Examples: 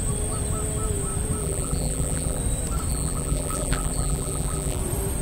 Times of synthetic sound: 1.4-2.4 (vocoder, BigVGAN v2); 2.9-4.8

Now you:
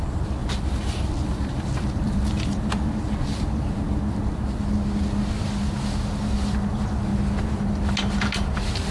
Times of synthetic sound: 0.4-4.6 (vocoder, BigVGAN v2)

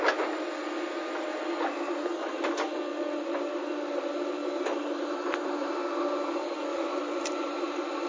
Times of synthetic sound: 2.9-5.9 (vocoder, BigVGAN v2); 6.7-8.1

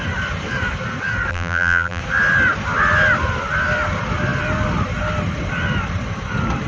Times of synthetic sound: 1.3-2.0 (vocoder, BigVGAN v2)

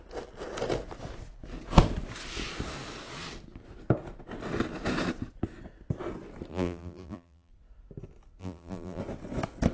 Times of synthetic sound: 6.5-7.5 (vocoder, BigVGAN v2); 8.4-9.0

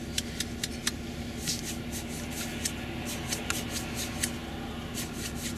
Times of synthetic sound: none

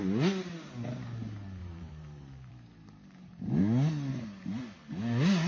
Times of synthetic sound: 1.6-3.6 (vocoder, BigVGAN v2); 4.1-4.6

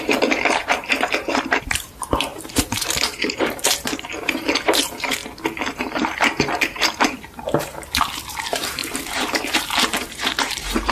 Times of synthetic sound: 0.0-5.2 (vocoder, BigVGAN v2); 5.7-10.9